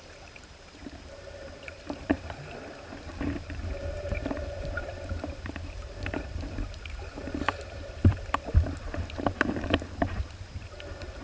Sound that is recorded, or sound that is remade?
remade